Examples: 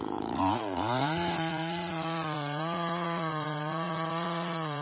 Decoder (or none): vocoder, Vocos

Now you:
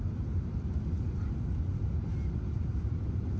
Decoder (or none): none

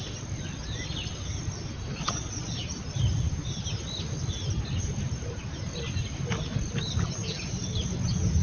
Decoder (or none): none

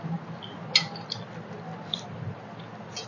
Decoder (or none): none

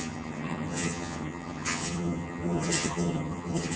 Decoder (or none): vocoder, HiFi-GAN